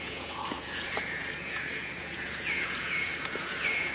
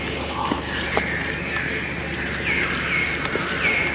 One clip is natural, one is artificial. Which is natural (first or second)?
second